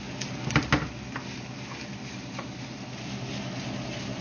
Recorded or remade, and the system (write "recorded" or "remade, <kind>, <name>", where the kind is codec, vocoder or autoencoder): recorded